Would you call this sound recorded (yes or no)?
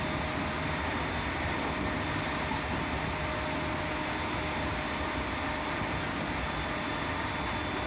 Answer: yes